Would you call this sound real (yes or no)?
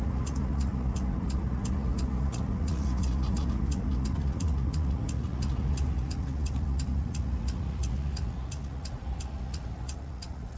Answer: no